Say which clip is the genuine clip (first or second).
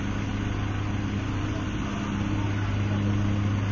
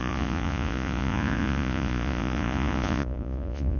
first